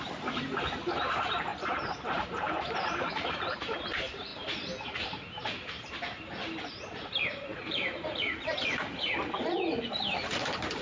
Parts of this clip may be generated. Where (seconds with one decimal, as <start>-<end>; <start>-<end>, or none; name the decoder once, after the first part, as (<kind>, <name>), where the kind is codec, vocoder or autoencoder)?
0.0-4.3 (vocoder, BigVGAN v2); 5.0-10.8